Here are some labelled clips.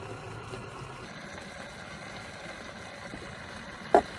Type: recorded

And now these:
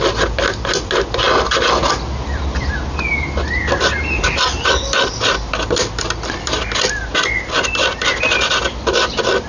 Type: recorded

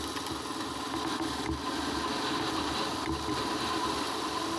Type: recorded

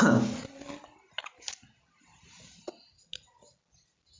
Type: recorded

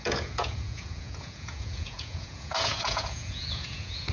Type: remade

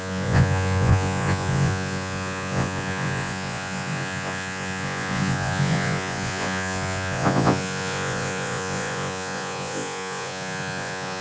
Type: remade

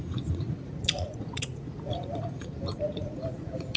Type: remade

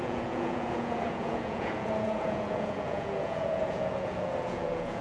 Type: remade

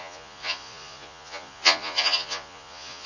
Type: remade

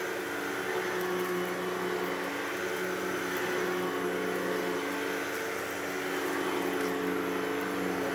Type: recorded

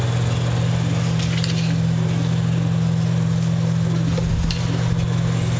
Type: recorded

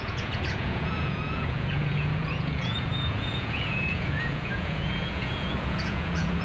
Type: remade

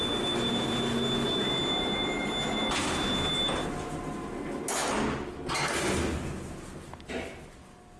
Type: recorded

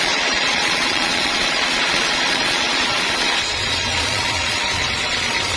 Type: remade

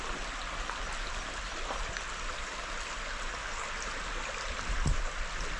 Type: recorded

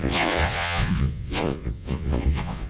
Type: remade